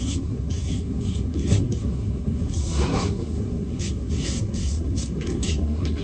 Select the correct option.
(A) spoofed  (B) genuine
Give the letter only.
A